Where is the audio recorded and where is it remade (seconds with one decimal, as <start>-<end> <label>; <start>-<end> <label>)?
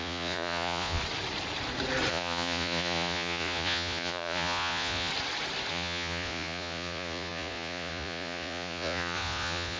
0.0-1.0 remade; 1.0-2.1 recorded; 2.1-5.1 remade; 5.1-5.7 recorded; 5.7-9.8 remade